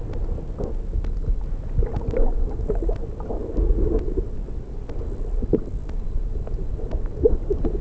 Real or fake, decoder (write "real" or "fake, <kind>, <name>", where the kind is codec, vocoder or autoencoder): real